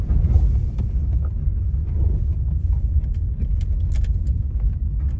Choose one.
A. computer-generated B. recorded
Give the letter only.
B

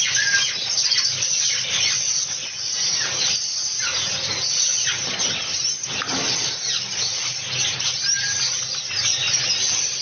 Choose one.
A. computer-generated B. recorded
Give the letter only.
B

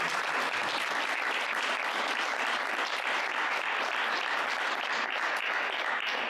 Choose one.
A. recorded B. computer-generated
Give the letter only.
A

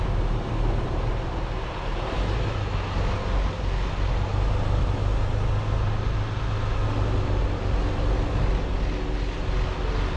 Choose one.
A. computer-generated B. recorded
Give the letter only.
B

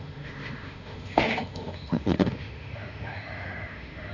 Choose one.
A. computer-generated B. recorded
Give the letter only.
A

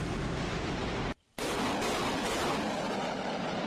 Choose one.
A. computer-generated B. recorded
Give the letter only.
B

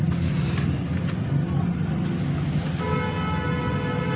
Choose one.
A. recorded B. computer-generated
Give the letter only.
A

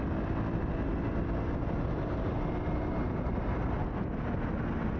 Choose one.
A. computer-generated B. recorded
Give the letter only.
B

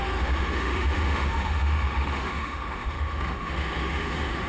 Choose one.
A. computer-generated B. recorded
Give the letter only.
A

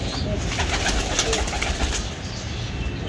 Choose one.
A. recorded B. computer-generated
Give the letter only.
A